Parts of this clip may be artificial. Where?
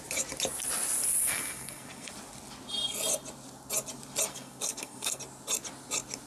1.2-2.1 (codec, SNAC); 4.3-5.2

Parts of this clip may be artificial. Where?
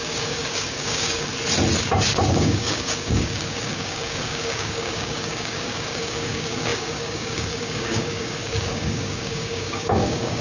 0.0-1.3 (codec, DAC); 2.3-10.4